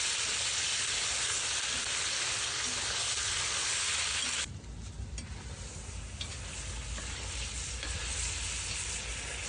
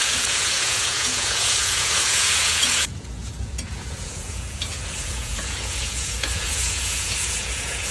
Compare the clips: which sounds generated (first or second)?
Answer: second